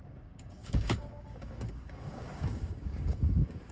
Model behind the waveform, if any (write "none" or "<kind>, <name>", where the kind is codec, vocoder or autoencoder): codec, DAC